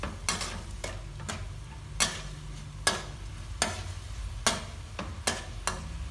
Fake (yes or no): no